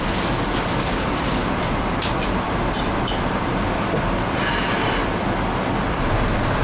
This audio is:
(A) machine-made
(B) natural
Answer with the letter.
A